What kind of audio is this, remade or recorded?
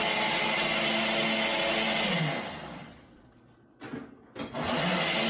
recorded